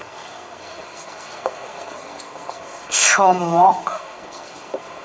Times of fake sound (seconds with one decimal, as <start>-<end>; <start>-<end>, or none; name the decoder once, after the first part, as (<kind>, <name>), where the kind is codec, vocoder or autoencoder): 0.0-5.0 (codec, SNAC)